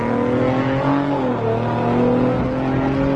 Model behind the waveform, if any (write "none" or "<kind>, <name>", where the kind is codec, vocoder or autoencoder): none